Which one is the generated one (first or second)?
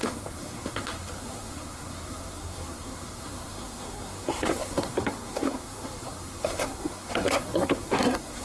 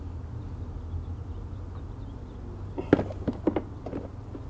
first